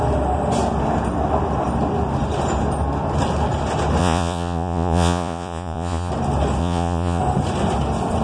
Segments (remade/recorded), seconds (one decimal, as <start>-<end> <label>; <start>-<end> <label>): 0.0-4.0 recorded; 4.0-6.1 remade; 6.1-6.6 recorded; 6.6-7.2 remade; 7.2-8.2 recorded